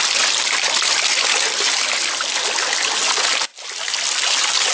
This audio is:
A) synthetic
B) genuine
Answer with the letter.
B